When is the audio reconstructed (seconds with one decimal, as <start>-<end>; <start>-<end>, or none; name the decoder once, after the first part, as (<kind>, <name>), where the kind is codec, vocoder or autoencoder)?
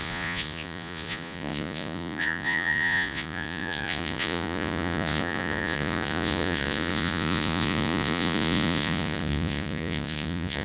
0.0-10.6 (vocoder, Vocos)